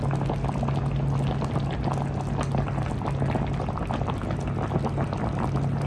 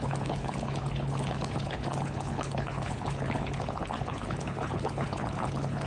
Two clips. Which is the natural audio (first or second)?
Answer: first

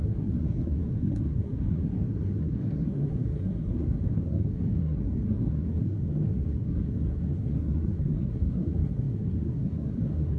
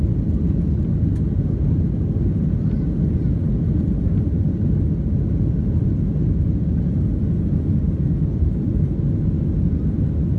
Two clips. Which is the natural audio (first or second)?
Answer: second